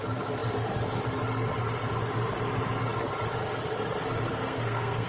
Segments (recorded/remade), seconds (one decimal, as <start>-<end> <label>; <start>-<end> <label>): 0.0-4.3 recorded; 4.3-5.1 remade